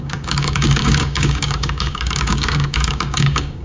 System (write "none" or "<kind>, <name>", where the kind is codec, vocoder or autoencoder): codec, DAC